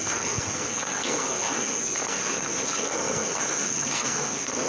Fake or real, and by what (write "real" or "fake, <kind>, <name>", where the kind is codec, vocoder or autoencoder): fake, codec, SNAC